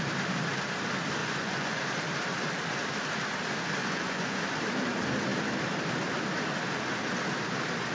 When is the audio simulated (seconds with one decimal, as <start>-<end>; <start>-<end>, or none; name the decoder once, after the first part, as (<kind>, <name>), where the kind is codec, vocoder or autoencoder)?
1.2-1.8 (vocoder, Vocos); 3.8-4.4